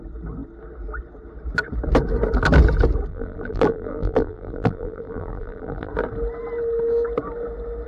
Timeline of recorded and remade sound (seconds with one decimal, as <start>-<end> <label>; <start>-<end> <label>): 0.0-3.1 recorded; 3.1-5.9 remade; 5.9-7.9 recorded